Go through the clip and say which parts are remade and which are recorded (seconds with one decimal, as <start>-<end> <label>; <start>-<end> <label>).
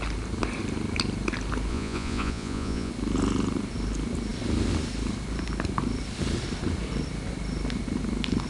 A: 0.0-1.7 recorded; 1.7-2.9 remade; 2.9-8.5 recorded